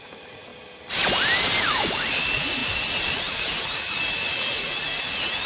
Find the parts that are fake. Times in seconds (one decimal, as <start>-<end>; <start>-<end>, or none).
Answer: 0.0-0.5; 1.6-5.5